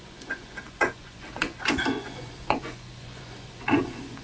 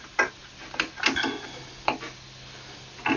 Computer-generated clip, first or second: first